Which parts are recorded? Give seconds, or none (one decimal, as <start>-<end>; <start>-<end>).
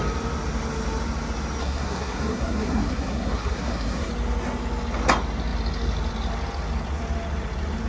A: 0.0-1.6; 4.1-7.9